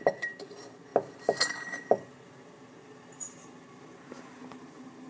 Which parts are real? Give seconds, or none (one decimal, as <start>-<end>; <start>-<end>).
0.0-5.1